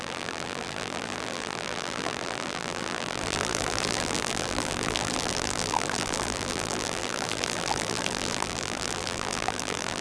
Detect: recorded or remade remade